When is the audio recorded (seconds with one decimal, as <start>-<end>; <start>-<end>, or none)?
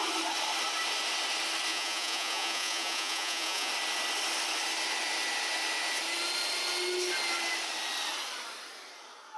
0.0-1.7; 3.7-9.4